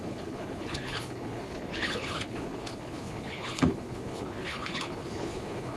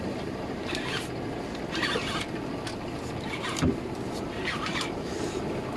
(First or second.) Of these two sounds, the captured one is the second